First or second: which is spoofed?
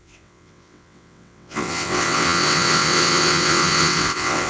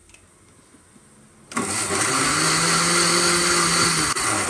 first